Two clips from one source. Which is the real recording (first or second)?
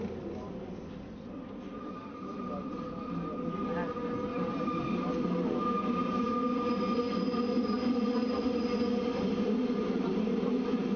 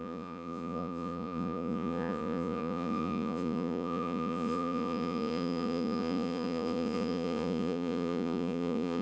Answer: first